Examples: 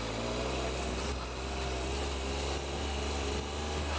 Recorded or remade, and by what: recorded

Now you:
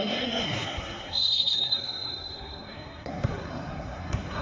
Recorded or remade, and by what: remade, codec, SNAC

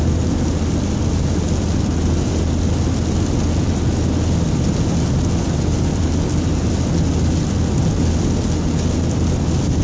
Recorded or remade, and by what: recorded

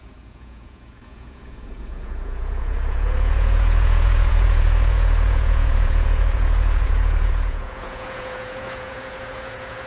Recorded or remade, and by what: remade, vocoder, Vocos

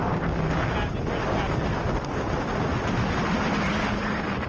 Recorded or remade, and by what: recorded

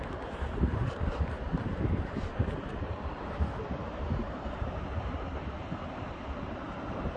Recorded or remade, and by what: remade, vocoder, BigVGAN v2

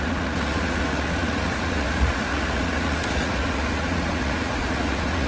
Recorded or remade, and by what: remade, vocoder, Vocos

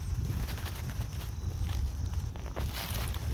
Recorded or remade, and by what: recorded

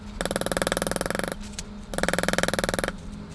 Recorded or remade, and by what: recorded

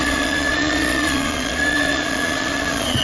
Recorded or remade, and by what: remade, vocoder, Vocos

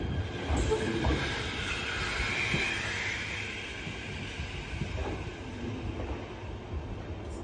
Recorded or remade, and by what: recorded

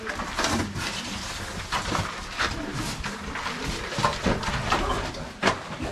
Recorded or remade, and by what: recorded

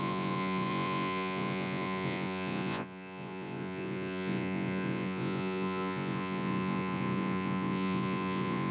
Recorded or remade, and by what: remade, vocoder, Vocos